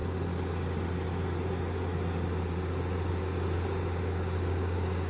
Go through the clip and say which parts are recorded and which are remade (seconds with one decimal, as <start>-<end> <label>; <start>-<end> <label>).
0.0-3.1 recorded; 3.1-5.1 remade